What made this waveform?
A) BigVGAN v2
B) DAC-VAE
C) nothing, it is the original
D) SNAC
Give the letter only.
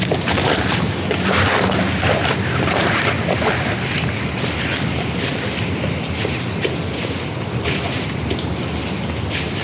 C